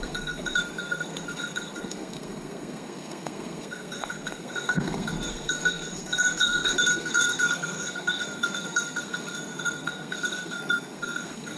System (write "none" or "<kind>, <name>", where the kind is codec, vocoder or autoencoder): codec, SNAC